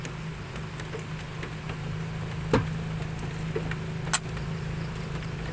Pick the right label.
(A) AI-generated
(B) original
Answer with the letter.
B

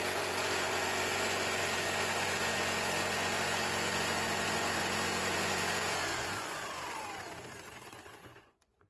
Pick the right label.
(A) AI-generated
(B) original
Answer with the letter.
A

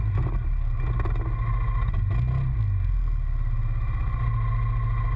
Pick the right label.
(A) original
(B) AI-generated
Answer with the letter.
A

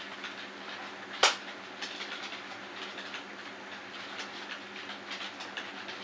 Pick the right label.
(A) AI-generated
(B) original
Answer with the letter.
B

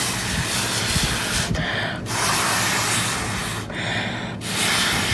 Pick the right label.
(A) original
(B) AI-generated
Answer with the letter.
A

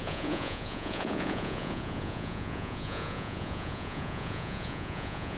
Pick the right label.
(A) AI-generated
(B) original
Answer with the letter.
A